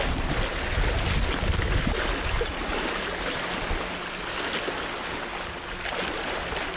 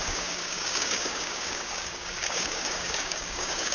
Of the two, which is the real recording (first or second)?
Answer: first